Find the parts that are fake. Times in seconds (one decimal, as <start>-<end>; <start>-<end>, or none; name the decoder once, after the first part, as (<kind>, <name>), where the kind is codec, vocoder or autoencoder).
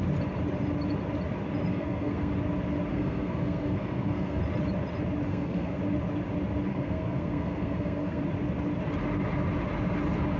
1.7-2.3 (codec, SNAC); 2.9-4.4; 5.3-5.8; 6.7-8.2